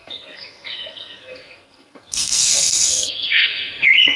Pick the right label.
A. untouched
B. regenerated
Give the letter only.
B